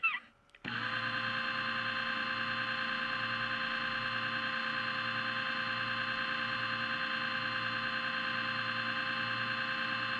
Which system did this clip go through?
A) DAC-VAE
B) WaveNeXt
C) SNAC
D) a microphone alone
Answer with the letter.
D